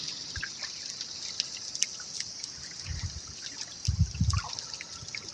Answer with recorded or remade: recorded